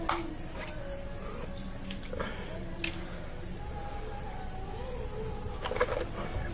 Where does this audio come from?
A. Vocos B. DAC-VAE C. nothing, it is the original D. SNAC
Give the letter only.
C